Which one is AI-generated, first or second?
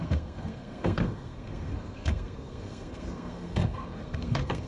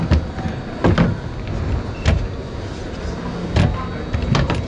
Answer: first